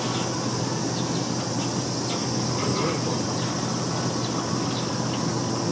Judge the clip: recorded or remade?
recorded